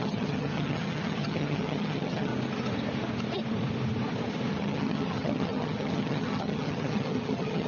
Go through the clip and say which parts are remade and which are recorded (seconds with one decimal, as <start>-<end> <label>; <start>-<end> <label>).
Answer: 0.0-2.3 remade; 2.3-4.5 recorded; 4.5-7.7 remade